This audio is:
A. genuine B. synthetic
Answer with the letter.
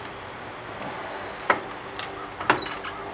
A